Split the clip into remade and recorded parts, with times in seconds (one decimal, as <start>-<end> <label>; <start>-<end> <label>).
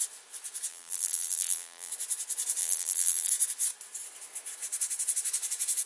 0.0-0.7 recorded; 0.7-1.9 remade; 1.9-2.6 recorded; 2.6-3.3 remade; 3.3-5.9 recorded